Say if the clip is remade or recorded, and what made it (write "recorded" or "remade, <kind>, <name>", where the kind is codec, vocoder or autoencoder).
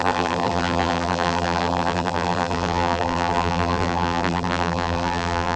remade, vocoder, BigVGAN v2